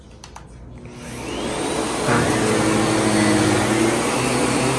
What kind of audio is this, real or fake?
real